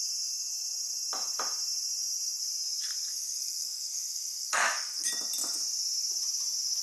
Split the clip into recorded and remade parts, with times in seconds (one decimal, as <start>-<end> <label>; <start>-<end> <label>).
0.0-3.1 recorded; 3.1-5.1 remade; 5.1-6.8 recorded